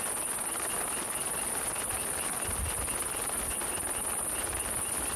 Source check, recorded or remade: recorded